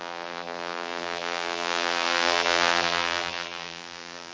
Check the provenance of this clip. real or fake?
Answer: fake